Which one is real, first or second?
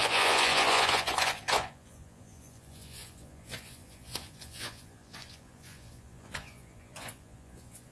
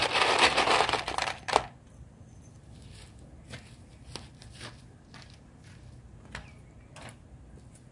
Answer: second